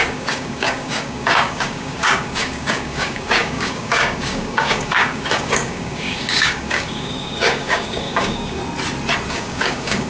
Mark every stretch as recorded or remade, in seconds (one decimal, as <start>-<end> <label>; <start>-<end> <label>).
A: 0.0-8.6 remade; 8.6-9.3 recorded; 9.3-10.1 remade

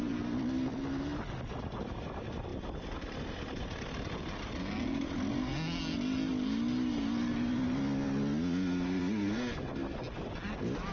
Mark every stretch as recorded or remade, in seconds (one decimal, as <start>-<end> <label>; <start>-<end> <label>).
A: 0.0-0.7 recorded; 0.7-1.8 remade; 1.8-10.9 recorded

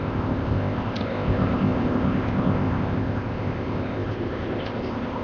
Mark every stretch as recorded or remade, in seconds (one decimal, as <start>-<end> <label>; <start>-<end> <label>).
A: 0.0-5.2 remade